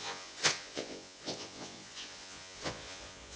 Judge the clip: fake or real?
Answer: fake